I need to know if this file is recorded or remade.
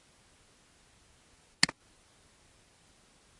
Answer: recorded